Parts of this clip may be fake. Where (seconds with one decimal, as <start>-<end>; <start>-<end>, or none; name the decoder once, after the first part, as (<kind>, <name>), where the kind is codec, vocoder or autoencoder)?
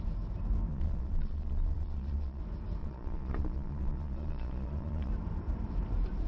0.7-2.4 (vocoder, Vocos); 2.8-5.1